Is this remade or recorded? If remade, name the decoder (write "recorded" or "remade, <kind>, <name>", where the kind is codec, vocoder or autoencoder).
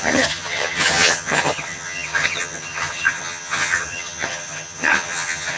remade, vocoder, HiFi-GAN